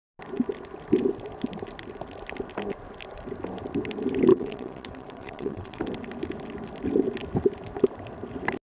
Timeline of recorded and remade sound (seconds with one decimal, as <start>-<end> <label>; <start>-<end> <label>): 0.0-4.3 recorded; 4.3-5.8 remade; 5.8-8.7 recorded